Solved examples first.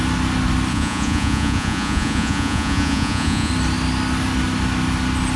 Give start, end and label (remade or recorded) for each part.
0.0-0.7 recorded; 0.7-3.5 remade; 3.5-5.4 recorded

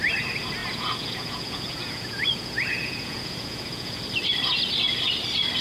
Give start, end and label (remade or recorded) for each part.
0.0-0.6 recorded; 0.6-4.0 remade; 4.0-5.6 recorded

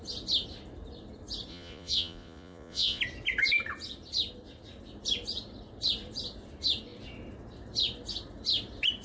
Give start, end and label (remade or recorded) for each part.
0.0-1.5 recorded; 1.5-3.0 remade; 3.0-9.0 recorded